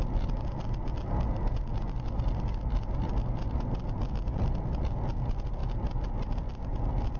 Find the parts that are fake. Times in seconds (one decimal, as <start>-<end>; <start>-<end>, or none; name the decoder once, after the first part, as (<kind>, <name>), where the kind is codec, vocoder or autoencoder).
none